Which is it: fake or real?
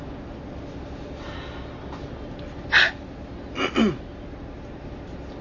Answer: real